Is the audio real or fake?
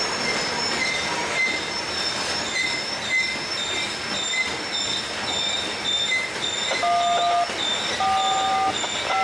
real